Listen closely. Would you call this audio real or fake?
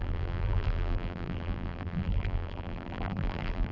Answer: fake